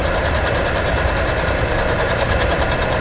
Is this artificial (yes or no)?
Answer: yes